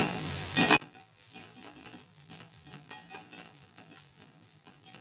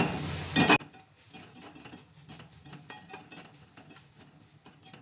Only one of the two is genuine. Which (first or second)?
second